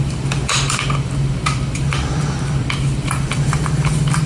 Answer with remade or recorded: remade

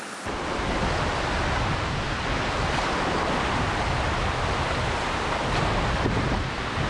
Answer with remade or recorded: recorded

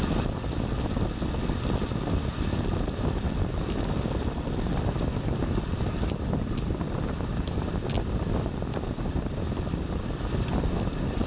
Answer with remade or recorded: remade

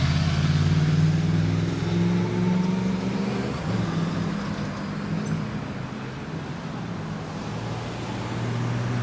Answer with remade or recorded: recorded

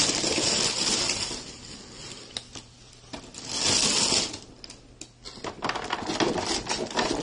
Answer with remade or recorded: recorded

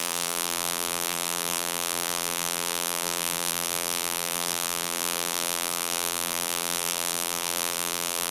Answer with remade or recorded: remade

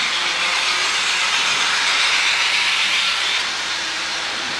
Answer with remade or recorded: remade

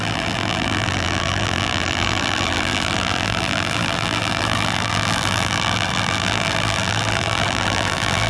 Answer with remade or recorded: remade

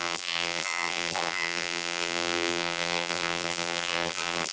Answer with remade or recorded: remade